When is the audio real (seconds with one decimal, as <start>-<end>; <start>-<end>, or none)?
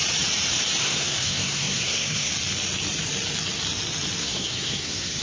0.0-0.8; 2.3-4.2